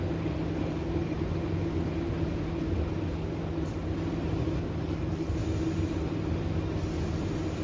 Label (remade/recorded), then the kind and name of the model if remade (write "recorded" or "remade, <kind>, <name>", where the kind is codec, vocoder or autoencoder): recorded